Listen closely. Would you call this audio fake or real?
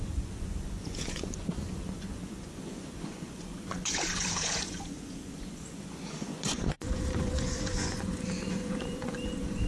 fake